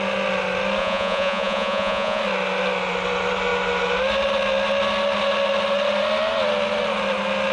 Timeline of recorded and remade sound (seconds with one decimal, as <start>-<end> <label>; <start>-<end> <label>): 0.0-0.8 recorded; 0.8-2.2 remade; 2.2-7.5 recorded